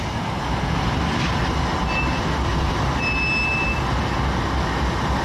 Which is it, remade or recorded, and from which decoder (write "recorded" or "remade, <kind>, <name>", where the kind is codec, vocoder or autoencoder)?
recorded